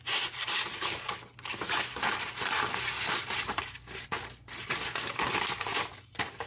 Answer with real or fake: real